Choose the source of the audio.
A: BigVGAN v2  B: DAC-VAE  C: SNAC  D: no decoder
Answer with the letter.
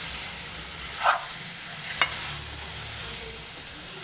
D